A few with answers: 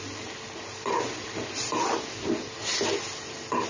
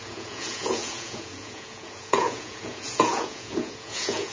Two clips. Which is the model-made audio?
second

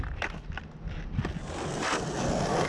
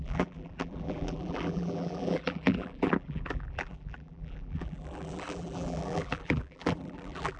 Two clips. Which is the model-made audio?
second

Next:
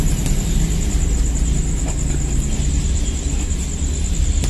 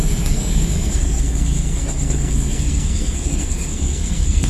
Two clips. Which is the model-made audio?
second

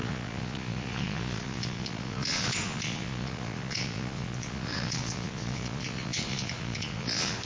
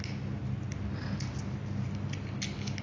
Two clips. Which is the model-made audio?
first